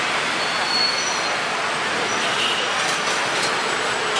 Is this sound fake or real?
real